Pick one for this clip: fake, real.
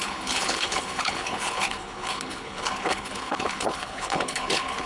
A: fake